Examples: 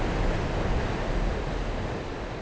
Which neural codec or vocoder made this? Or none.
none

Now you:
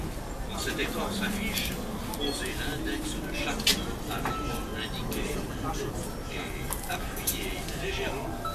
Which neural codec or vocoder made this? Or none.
none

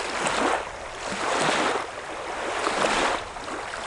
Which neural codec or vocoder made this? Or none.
none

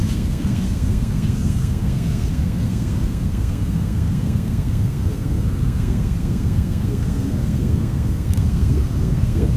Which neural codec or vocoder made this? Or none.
codec, SNAC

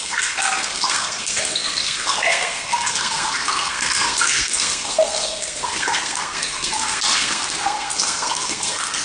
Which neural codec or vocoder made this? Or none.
codec, SNAC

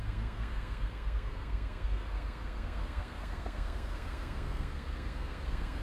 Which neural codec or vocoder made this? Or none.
codec, SNAC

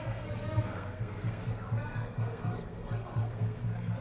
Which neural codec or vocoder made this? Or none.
codec, SNAC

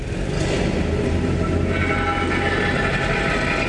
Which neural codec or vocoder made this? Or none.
none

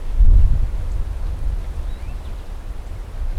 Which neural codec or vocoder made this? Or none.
none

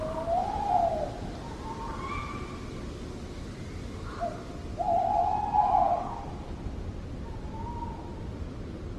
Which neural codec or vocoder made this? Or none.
none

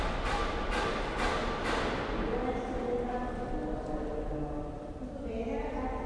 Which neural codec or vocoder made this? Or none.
none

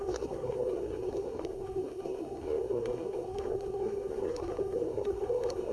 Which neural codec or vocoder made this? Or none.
codec, SNAC